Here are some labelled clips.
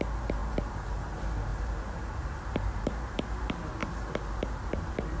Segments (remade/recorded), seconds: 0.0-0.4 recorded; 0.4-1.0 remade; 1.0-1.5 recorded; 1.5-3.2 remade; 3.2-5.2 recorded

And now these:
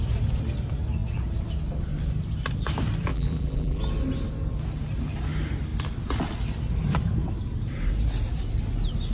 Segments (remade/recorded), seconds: 0.0-3.1 recorded; 3.1-3.8 remade; 3.8-9.1 recorded

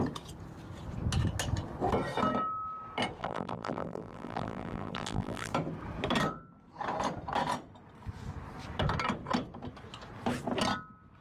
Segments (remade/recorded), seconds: 0.0-3.2 recorded; 3.2-5.5 remade; 5.5-11.2 recorded